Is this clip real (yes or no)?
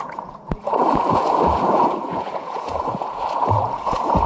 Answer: no